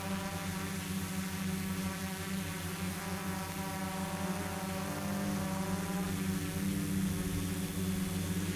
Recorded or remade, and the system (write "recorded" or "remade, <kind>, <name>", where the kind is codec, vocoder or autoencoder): recorded